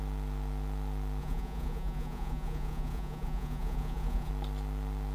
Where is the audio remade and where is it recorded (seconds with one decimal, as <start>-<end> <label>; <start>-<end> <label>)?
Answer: 0.0-1.2 recorded; 1.2-4.3 remade; 4.3-5.1 recorded